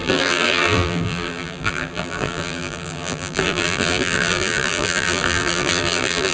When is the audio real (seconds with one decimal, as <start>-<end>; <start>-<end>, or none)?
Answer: none